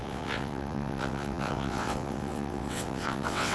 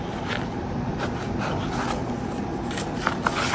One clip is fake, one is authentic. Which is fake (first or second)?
first